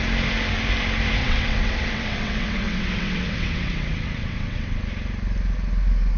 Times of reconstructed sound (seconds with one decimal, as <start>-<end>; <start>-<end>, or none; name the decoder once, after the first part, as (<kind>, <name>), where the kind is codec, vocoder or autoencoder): 1.2-4.9 (vocoder, WaveNeXt)

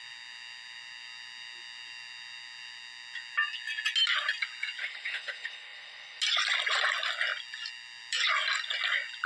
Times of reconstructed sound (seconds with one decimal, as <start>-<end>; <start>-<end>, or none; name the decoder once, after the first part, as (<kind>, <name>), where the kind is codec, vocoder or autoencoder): 4.8-6.2 (codec, HILCodec)

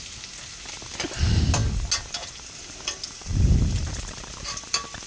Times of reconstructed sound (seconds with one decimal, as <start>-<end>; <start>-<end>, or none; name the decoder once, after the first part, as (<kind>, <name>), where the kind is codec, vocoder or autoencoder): none

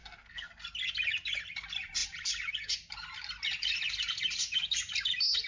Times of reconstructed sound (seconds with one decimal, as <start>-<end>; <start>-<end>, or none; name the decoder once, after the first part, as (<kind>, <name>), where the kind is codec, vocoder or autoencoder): 0.0-0.6 (codec, SNAC)

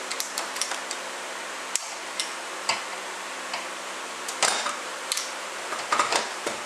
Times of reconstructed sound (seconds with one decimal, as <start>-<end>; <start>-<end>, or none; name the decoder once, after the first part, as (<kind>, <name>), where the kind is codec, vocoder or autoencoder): 0.0-0.8 (vocoder, BigVGAN v2); 4.8-6.7